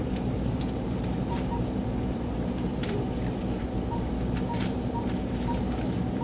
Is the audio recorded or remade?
remade